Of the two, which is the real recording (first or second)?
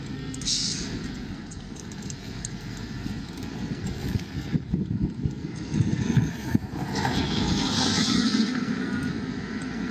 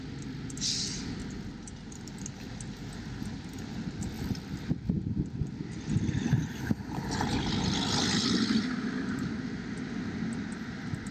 second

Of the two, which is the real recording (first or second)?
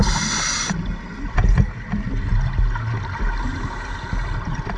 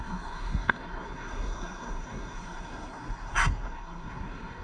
first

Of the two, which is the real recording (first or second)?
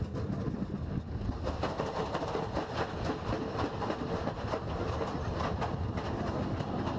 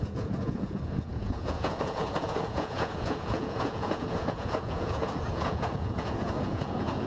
first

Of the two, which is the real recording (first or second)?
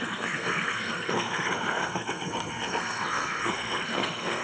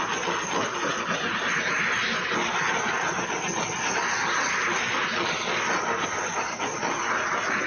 second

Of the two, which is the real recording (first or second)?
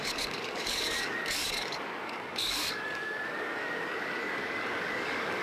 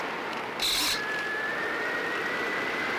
second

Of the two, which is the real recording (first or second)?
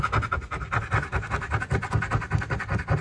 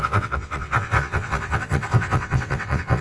first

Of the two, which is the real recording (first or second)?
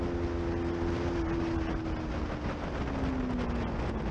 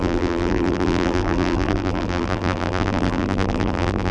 first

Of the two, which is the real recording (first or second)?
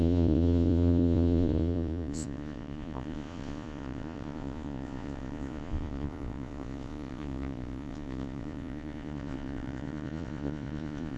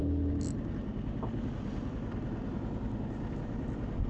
second